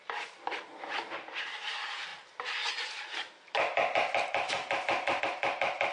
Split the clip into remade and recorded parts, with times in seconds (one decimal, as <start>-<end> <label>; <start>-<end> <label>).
0.0-2.1 remade; 2.1-5.2 recorded; 5.2-5.9 remade